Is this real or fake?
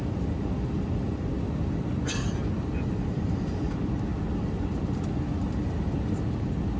real